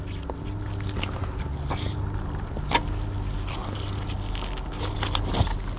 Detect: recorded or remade recorded